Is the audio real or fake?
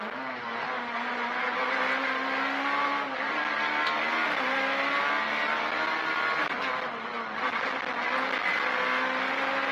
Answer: real